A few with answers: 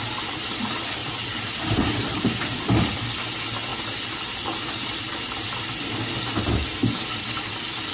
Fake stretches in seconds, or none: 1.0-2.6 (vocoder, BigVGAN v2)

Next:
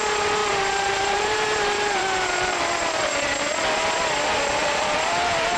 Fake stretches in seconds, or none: 0.4-3.3 (vocoder, BigVGAN v2); 4.6-5.6

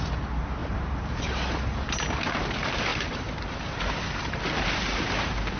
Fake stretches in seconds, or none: 0.6-1.5 (vocoder, BigVGAN v2); 2.9-3.8

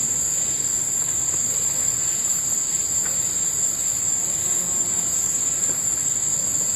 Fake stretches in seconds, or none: 0.0-6.0 (vocoder, BigVGAN v2)

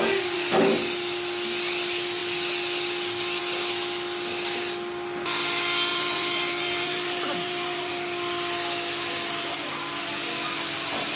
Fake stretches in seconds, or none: 5.9-7.9 (vocoder, BigVGAN v2)